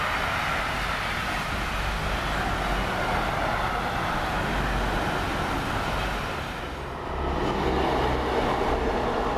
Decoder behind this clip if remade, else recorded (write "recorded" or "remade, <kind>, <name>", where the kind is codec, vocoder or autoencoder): recorded